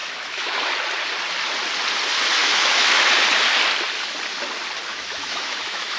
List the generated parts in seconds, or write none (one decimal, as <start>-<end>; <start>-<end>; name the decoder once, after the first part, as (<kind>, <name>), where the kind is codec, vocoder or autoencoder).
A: 0.0-0.6 (autoencoder, DAC-VAE); 2.4-3.1; 4.9-6.0